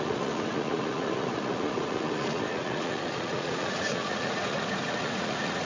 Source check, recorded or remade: remade